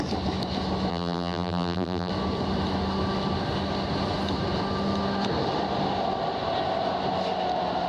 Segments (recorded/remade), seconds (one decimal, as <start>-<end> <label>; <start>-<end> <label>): 0.0-0.9 recorded; 0.9-2.1 remade; 2.1-7.9 recorded